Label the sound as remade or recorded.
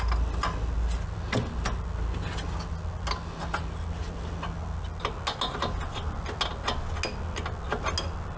recorded